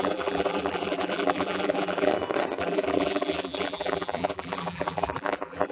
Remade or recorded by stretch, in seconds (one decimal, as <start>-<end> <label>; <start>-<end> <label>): 0.0-2.1 remade; 2.1-2.6 recorded; 2.6-5.7 remade